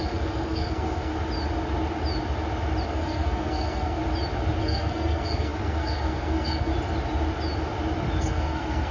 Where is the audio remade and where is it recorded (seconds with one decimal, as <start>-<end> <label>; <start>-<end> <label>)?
0.0-1.1 remade; 1.1-2.9 recorded; 2.9-4.0 remade; 4.0-4.6 recorded; 4.6-6.7 remade; 6.7-8.2 recorded; 8.2-8.9 remade